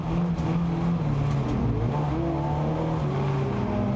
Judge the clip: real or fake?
real